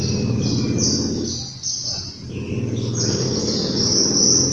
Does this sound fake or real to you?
real